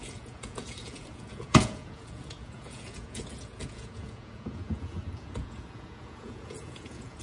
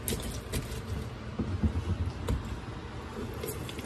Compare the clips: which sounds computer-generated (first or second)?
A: first